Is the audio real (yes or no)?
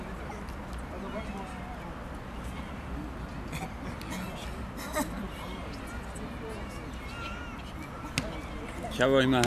yes